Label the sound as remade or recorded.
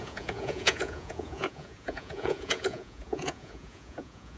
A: remade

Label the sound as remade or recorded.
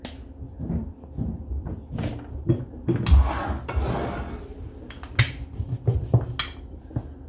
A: recorded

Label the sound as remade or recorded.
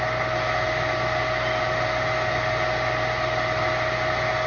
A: recorded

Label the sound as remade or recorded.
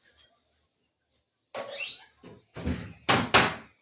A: recorded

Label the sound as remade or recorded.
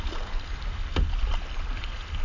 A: recorded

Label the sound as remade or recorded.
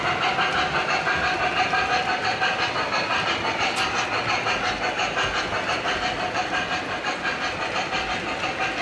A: recorded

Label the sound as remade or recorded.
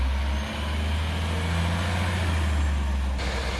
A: recorded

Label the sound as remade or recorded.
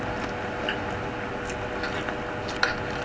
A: recorded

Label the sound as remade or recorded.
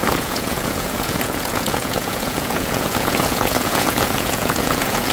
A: remade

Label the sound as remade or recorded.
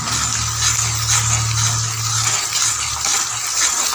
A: recorded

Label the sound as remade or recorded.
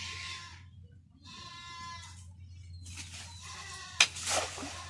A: recorded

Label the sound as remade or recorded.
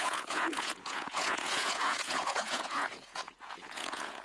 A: remade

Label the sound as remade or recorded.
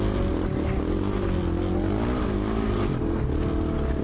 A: recorded